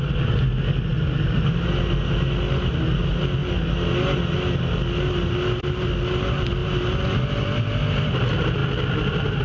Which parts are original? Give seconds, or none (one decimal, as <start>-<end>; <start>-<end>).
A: 0.0-9.4